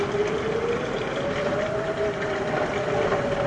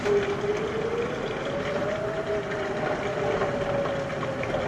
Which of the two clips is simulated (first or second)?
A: first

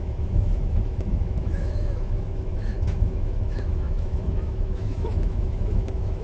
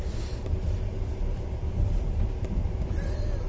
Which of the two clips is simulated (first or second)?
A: first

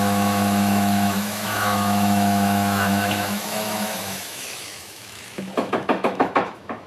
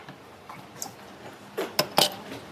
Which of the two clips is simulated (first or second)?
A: first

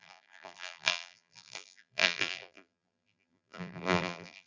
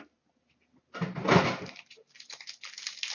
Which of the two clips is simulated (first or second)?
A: first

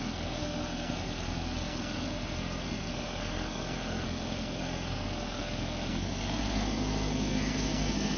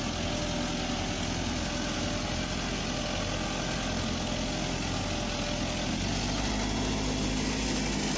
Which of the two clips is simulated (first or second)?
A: first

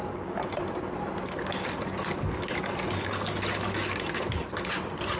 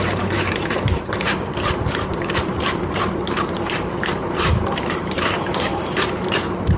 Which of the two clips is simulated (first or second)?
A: second